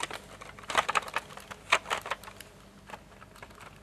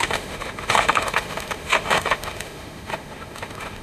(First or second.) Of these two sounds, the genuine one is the first